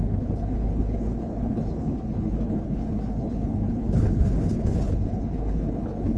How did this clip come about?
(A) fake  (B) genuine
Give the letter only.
A